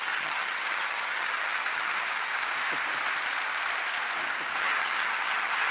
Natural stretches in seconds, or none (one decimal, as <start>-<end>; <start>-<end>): 2.3-4.6